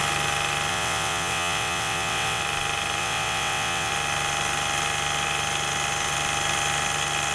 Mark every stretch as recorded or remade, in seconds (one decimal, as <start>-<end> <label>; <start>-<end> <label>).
0.0-0.7 recorded; 0.7-2.4 remade; 2.4-3.0 recorded; 3.0-3.9 remade; 3.9-7.3 recorded